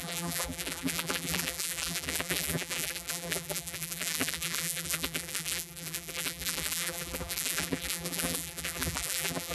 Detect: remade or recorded remade